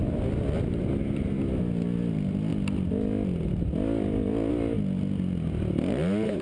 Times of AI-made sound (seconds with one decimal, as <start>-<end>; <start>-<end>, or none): none